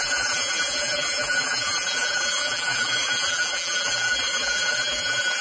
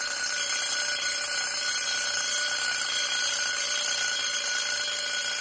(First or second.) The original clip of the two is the second